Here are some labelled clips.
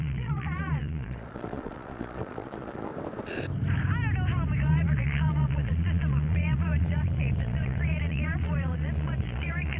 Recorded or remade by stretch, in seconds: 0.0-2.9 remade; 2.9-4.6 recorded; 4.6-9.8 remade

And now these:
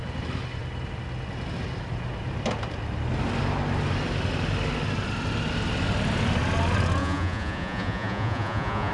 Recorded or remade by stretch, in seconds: 0.0-7.0 recorded; 7.0-8.9 remade

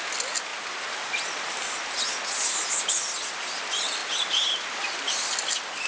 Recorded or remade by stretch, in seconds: 0.0-5.9 recorded

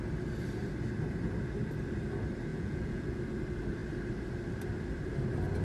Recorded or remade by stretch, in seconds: 0.0-2.5 recorded; 2.5-3.2 remade; 3.2-5.6 recorded

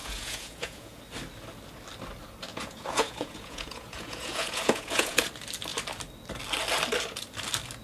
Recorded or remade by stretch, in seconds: 0.0-1.0 remade; 1.0-2.5 recorded; 2.5-5.3 remade; 5.3-7.8 recorded

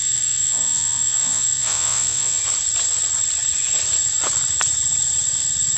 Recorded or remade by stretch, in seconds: 0.0-2.4 remade; 2.4-5.8 recorded

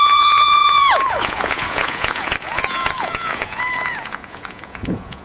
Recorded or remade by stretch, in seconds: 0.0-5.2 remade

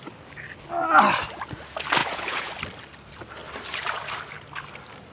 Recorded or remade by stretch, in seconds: 0.0-2.0 recorded; 2.0-2.5 remade; 2.5-5.1 recorded